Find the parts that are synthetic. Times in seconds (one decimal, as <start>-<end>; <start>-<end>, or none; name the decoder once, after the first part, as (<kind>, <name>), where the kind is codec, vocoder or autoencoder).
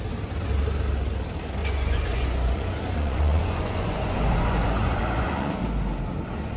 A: 1.6-5.6 (vocoder, Vocos)